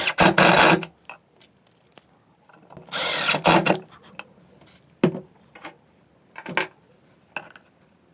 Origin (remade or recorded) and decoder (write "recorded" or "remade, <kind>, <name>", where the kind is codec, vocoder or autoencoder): recorded